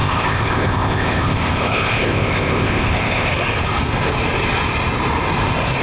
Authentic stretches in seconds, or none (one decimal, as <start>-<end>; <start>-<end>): 3.3-5.8